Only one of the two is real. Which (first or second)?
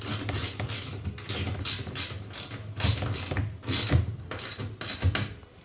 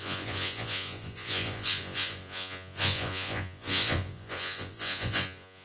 first